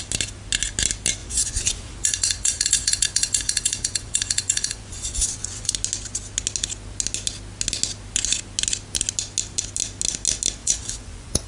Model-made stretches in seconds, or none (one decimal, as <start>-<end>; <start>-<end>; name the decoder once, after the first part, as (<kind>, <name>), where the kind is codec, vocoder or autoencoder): 1.2-5.7 (vocoder, Vocos); 10.6-11.5